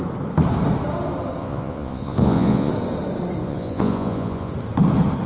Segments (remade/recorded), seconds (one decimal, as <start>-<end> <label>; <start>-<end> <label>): 0.0-1.4 recorded; 1.4-2.7 remade; 2.7-3.4 recorded; 3.4-4.5 remade; 4.5-5.3 recorded